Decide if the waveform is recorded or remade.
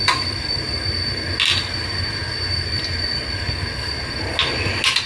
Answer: recorded